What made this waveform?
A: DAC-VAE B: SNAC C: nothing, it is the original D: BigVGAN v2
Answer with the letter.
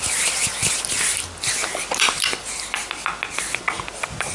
C